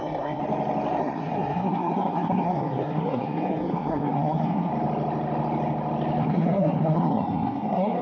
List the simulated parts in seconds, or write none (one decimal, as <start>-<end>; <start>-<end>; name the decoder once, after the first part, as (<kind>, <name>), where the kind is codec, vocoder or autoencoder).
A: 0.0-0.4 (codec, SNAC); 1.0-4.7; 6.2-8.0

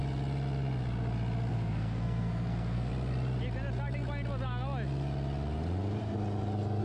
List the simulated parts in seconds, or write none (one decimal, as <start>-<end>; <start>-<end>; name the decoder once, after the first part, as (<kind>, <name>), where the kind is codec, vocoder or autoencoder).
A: 1.5-2.9 (codec, SNAC)

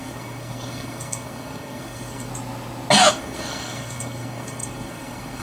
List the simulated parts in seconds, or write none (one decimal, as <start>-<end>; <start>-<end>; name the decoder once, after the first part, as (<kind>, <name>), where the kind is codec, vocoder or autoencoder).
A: 0.0-2.3 (codec, SNAC); 3.1-5.4